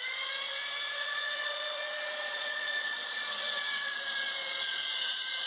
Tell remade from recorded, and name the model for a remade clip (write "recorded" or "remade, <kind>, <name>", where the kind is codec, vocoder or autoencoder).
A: remade, vocoder, Vocos